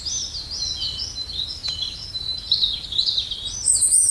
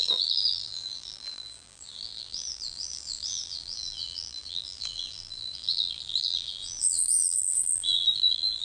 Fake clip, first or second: second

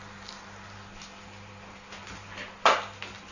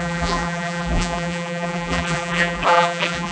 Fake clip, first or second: second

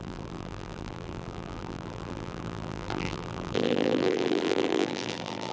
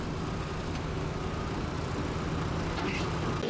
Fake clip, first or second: first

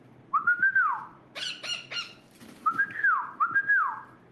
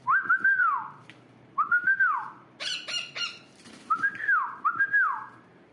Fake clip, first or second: second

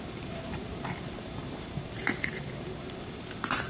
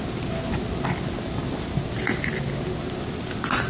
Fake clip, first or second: first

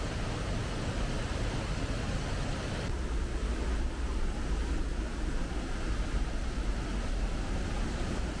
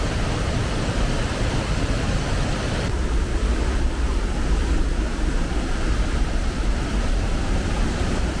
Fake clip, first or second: second